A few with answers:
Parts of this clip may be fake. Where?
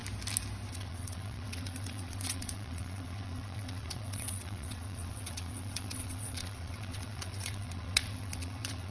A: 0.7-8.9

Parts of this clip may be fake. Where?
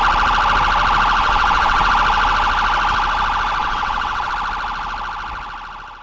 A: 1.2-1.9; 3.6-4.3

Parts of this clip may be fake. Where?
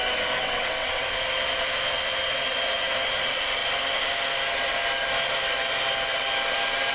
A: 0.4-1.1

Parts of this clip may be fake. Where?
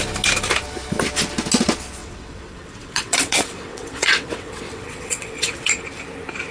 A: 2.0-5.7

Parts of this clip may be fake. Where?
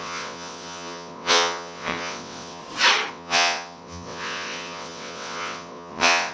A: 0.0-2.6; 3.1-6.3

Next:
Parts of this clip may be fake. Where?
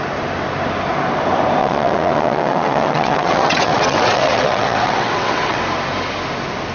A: 1.6-5.6